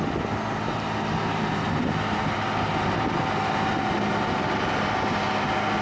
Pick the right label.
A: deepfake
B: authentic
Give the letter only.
B